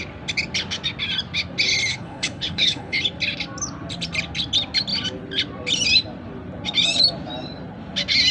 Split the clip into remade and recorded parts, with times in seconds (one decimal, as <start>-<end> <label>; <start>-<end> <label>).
0.0-1.9 recorded; 1.9-3.0 remade; 3.0-8.3 recorded